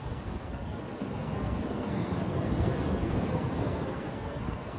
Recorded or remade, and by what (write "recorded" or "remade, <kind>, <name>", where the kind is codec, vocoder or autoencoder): remade, codec, SNAC